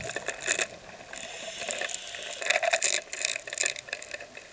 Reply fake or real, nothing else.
real